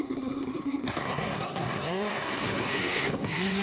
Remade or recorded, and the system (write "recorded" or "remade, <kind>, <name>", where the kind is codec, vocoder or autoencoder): remade, codec, SNAC